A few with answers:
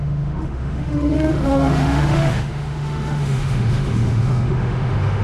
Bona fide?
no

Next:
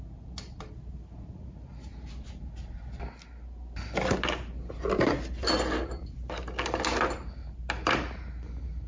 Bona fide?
yes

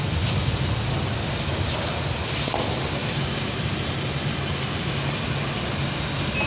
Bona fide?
yes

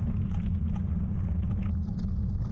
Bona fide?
yes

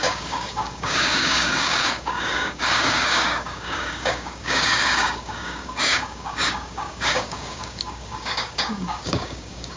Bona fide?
no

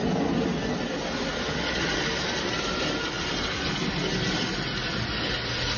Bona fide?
yes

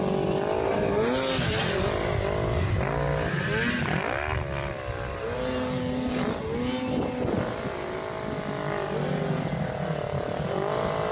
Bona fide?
yes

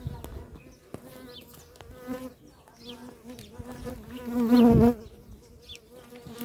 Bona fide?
yes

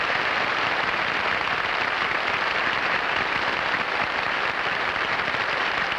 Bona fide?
no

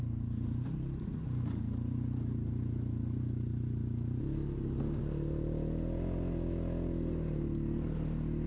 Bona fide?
yes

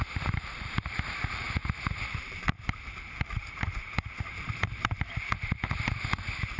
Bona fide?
no